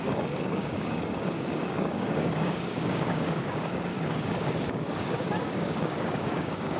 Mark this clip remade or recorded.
remade